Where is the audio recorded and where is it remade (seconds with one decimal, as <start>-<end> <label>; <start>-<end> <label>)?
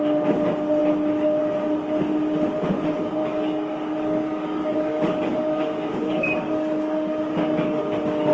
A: 0.0-3.2 recorded; 3.2-7.8 remade; 7.8-8.3 recorded